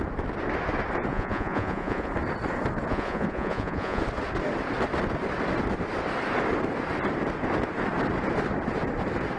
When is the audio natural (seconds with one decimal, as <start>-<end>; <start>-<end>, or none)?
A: 0.0-1.1; 2.1-2.9; 4.0-9.4